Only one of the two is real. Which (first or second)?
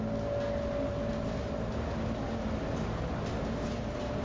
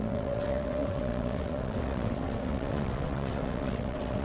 first